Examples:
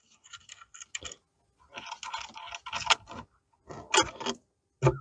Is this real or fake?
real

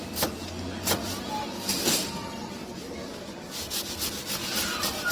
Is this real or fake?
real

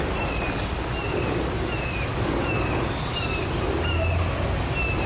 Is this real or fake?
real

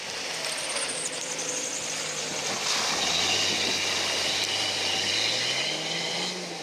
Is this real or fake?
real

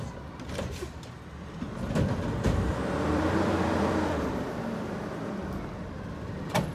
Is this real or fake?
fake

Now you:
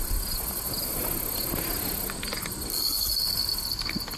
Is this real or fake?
real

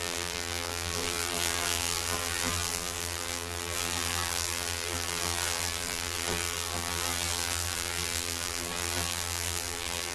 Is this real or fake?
fake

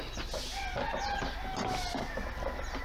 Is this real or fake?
real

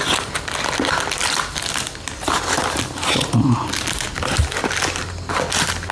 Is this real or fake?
real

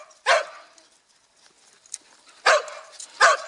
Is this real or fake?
real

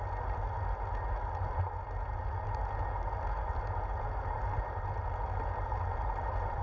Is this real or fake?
real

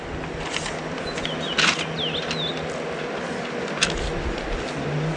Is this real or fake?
real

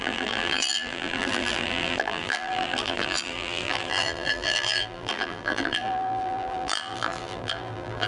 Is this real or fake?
fake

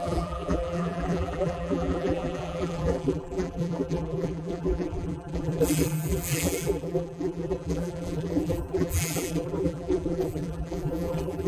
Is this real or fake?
fake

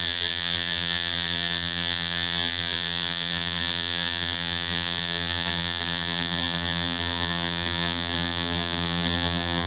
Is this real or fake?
fake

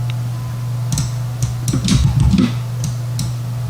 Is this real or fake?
real